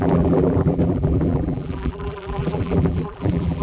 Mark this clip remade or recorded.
remade